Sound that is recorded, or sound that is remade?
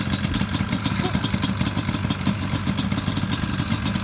recorded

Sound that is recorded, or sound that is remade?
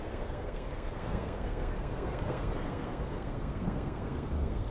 remade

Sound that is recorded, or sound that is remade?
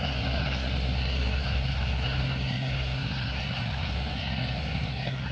remade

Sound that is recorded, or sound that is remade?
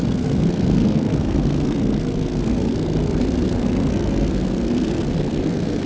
remade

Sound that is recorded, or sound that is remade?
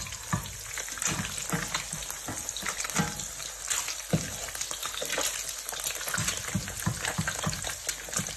recorded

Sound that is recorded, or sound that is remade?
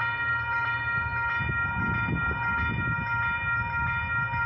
recorded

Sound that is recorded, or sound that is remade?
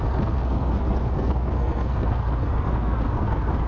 remade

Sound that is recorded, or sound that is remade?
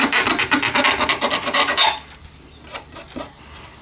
recorded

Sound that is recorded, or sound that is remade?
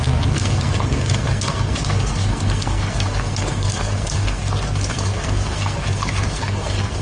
remade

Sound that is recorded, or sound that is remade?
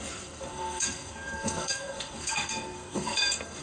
remade